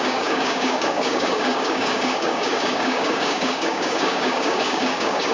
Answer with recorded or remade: remade